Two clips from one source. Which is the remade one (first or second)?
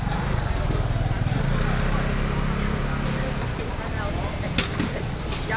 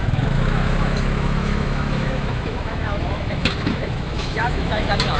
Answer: second